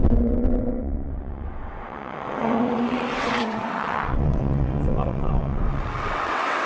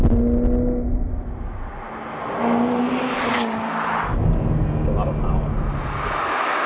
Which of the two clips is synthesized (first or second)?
first